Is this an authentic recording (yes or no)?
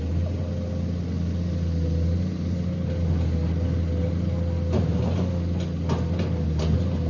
yes